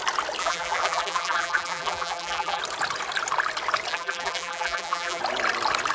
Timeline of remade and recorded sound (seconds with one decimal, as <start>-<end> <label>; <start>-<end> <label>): 0.0-0.4 recorded; 0.4-2.6 remade; 2.6-3.9 recorded; 3.9-5.2 remade; 5.2-5.9 recorded